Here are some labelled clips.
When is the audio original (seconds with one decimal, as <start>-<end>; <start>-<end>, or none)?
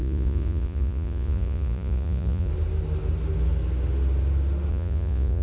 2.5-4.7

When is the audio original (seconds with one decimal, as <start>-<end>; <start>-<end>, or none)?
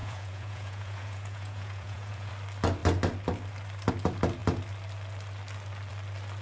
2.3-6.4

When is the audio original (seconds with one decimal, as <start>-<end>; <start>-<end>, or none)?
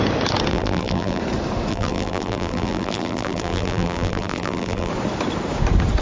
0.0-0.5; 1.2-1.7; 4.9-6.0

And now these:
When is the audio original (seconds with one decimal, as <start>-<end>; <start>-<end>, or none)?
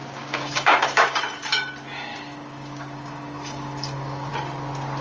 1.2-2.1; 4.3-5.0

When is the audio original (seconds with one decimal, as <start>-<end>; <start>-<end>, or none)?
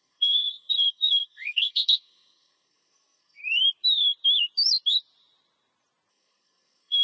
3.4-6.1